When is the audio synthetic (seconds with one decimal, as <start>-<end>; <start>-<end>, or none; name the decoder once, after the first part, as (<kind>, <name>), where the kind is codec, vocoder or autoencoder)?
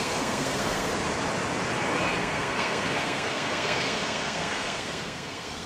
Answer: 0.0-0.9 (codec, SNAC); 2.2-5.7